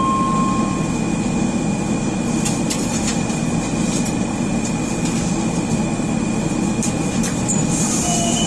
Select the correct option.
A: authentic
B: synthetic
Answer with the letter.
A